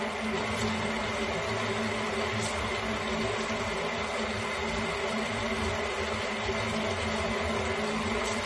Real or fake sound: real